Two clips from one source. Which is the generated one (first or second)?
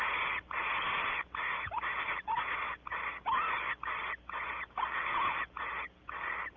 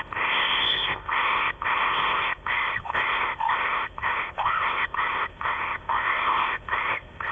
second